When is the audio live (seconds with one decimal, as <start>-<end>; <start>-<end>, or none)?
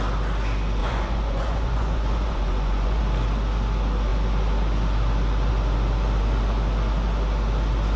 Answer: 0.0-0.8; 3.0-8.0